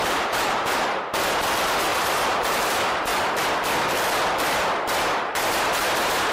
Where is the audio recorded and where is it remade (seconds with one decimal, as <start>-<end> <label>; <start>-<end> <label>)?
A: 0.0-1.3 remade; 1.3-1.9 recorded; 1.9-2.6 remade; 2.6-5.3 recorded; 5.3-5.8 remade; 5.8-6.3 recorded